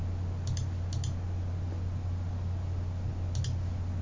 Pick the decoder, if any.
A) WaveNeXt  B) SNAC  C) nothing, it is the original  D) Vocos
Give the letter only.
C